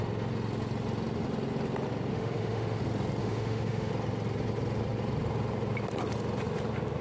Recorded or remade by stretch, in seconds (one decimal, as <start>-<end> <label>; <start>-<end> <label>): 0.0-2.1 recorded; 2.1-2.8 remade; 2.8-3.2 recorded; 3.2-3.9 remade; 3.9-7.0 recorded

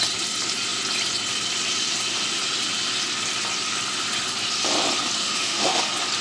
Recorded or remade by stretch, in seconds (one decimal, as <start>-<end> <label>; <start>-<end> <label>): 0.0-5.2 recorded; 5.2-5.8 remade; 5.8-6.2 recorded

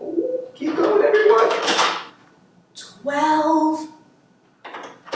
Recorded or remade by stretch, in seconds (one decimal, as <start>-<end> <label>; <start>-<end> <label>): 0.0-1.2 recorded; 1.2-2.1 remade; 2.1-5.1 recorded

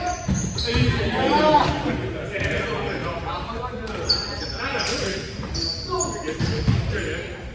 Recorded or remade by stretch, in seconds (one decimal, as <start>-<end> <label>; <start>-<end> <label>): 0.0-7.5 recorded

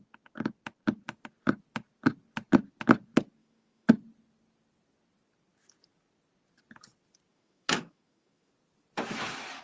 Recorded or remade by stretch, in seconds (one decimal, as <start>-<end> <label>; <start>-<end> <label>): 0.0-3.4 recorded; 3.4-4.0 remade; 4.0-7.3 recorded; 7.3-8.5 remade; 8.5-9.6 recorded